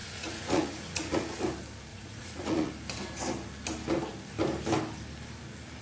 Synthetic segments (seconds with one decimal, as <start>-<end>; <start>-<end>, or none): 0.0-1.3; 1.9-2.7